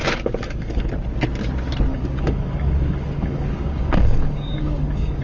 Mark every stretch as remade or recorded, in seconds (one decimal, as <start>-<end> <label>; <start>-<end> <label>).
0.0-0.9 remade; 0.9-1.9 recorded; 1.9-5.2 remade